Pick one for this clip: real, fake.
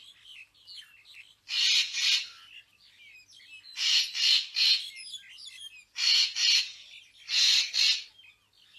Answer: real